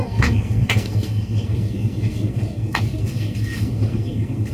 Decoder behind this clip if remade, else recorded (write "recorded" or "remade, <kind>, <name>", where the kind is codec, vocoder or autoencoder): remade, codec, SNAC